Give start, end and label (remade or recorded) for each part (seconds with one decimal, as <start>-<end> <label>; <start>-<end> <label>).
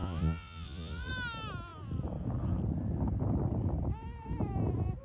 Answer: 0.0-1.1 remade; 1.1-5.0 recorded